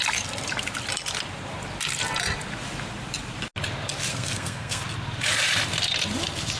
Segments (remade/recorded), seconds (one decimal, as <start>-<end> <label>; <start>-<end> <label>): 0.0-4.1 recorded; 4.1-4.8 remade; 4.8-6.6 recorded